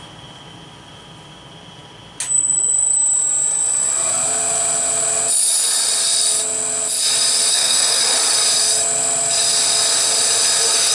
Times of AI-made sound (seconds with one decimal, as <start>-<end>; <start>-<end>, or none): 7.5-8.0